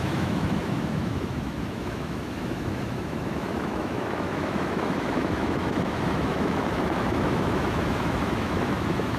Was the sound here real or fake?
fake